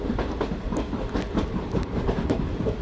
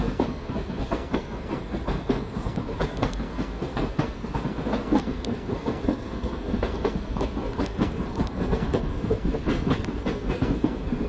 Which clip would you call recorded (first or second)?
first